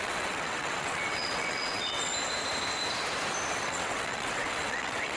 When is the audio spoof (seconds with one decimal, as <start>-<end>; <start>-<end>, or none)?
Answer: 0.0-2.1; 3.5-5.2